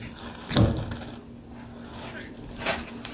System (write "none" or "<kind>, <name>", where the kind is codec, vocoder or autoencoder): none